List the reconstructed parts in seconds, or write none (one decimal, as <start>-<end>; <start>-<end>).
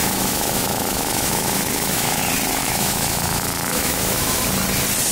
0.0-2.2; 2.6-4.4